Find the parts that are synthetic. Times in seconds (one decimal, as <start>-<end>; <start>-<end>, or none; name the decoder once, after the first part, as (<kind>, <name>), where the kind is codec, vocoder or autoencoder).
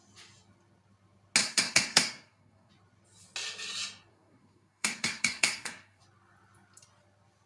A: 1.4-2.7 (codec, SNAC); 4.1-6.0